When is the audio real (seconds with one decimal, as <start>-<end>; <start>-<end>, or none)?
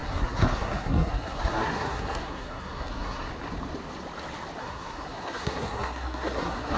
3.3-4.6